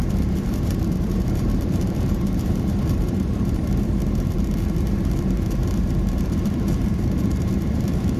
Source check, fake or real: fake